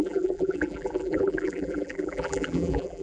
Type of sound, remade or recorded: remade